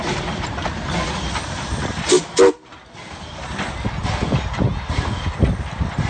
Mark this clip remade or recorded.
recorded